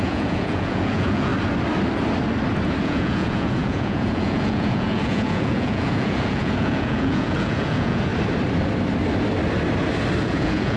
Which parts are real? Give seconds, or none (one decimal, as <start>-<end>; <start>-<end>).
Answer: 1.3-2.8; 8.1-10.2